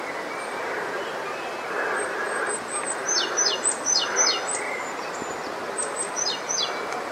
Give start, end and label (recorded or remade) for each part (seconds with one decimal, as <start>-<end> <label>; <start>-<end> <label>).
0.0-7.1 recorded